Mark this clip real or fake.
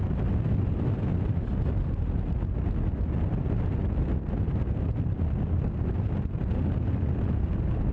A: real